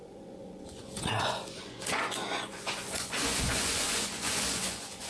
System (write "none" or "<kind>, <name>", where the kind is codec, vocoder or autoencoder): vocoder, Vocos